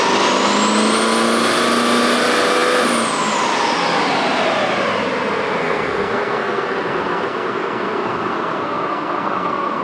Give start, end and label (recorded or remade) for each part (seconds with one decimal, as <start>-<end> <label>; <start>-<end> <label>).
0.0-5.6 recorded; 5.6-9.8 remade